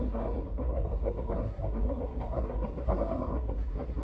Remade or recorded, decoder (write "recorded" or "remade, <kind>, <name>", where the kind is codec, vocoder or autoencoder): remade, codec, SNAC